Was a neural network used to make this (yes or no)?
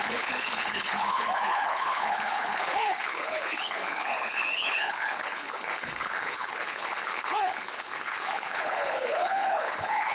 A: yes